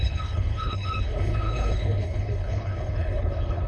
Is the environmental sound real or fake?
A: fake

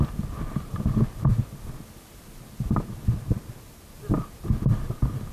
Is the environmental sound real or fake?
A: real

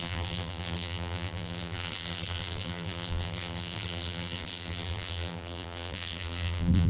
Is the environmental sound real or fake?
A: fake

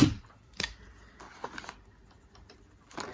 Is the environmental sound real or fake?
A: real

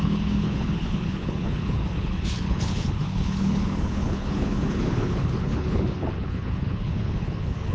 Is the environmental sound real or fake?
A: fake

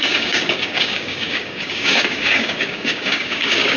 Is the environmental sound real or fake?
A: fake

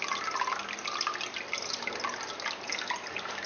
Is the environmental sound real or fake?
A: real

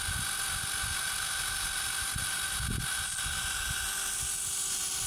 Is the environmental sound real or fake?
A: real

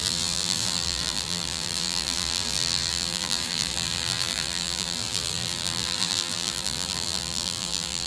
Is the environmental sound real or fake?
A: fake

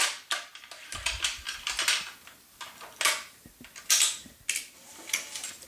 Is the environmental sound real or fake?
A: real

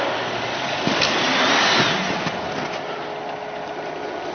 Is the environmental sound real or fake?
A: real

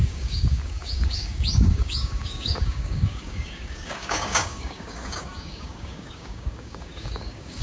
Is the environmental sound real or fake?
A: fake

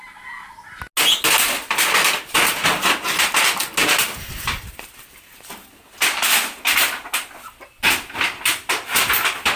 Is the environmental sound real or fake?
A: real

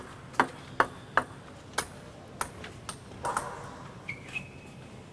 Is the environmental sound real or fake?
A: real